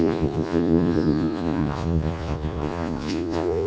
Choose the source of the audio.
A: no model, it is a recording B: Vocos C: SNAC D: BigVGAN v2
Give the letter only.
B